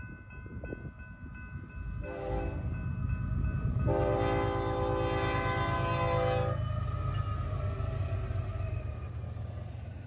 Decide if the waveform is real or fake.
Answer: real